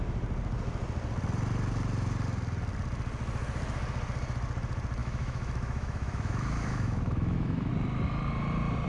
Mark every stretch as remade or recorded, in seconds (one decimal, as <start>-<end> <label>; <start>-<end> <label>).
0.0-5.0 recorded; 5.0-7.7 remade; 7.7-8.9 recorded